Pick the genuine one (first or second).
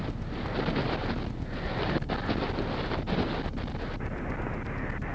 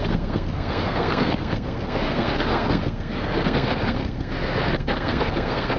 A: first